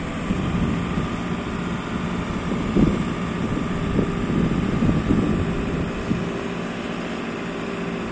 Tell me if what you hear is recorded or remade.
recorded